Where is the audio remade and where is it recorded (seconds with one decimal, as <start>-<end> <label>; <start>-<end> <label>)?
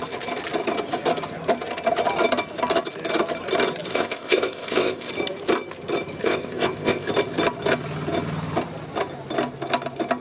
0.0-3.9 recorded; 3.9-5.1 remade; 5.1-6.2 recorded; 6.2-7.1 remade; 7.1-10.2 recorded